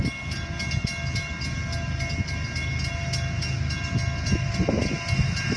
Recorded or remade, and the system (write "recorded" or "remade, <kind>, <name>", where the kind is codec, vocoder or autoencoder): recorded